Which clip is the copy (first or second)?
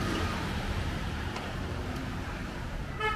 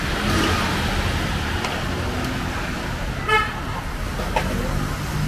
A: first